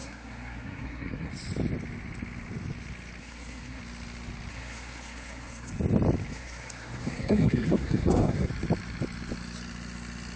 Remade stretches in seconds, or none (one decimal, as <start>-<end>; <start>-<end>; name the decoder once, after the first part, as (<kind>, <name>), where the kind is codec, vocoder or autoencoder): 0.0-1.3 (codec, SNAC); 3.2-3.8; 4.5-5.7; 6.3-8.5